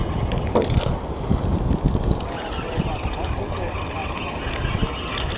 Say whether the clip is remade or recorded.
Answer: recorded